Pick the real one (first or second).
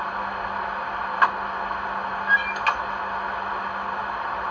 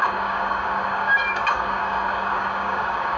first